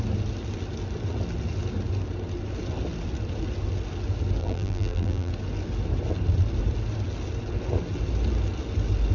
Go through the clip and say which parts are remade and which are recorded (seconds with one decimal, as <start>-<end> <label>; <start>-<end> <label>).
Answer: 0.0-4.4 recorded; 4.4-5.3 remade; 5.3-9.1 recorded